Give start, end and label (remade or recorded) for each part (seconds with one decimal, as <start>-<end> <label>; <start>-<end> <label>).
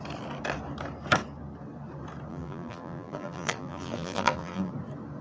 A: 0.0-2.3 recorded; 2.3-4.7 remade; 4.7-5.2 recorded